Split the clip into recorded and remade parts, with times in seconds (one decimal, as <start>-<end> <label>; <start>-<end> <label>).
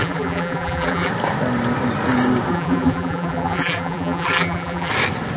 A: 0.0-1.1 remade; 1.1-2.5 recorded; 2.5-4.9 remade; 4.9-5.4 recorded